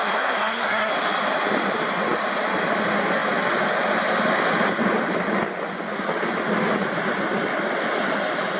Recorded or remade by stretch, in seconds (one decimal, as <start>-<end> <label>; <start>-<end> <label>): 0.0-0.9 remade; 0.9-8.6 recorded

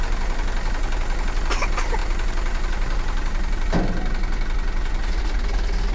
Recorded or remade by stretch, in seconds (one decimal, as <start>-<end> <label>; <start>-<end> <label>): 0.0-5.9 recorded